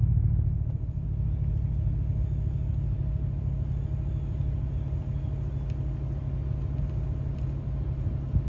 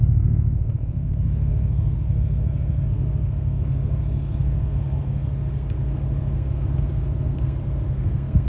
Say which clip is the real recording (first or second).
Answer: first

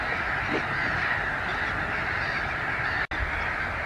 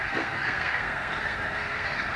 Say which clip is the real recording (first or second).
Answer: first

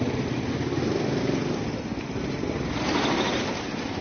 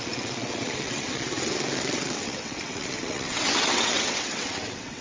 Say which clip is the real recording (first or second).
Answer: first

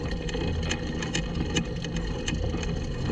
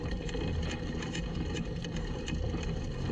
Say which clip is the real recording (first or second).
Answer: first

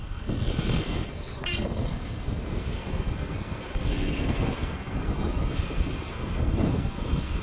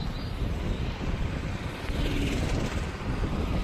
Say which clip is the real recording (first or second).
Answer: second